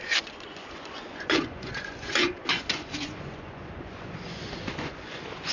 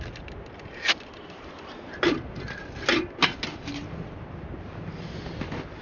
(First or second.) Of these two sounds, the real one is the second